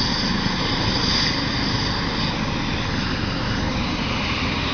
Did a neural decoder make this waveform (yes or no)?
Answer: no